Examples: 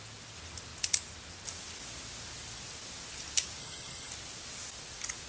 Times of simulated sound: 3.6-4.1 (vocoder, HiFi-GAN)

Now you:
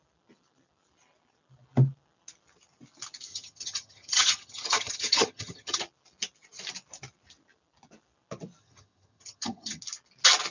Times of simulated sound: 3.3-5.8 (vocoder, HiFi-GAN); 8.6-9.8

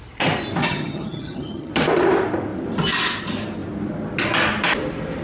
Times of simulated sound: 0.6-1.7 (vocoder, HiFi-GAN)

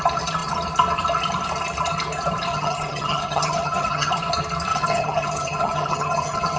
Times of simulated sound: 2.5-4.1 (vocoder, HiFi-GAN); 4.7-6.6